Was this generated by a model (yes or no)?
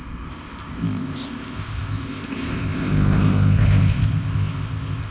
yes